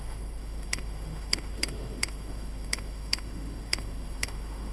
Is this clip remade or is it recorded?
remade